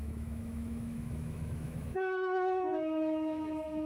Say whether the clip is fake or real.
fake